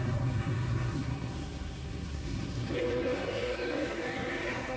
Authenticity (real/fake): fake